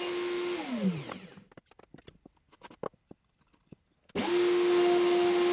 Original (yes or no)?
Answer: yes